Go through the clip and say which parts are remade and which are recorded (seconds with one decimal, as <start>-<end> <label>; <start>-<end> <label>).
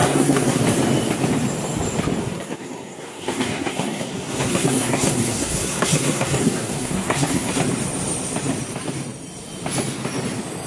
0.0-0.6 remade; 0.6-2.2 recorded; 2.2-7.5 remade; 7.5-10.7 recorded